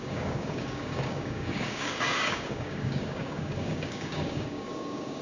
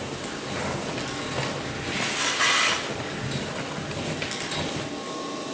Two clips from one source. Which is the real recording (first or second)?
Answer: second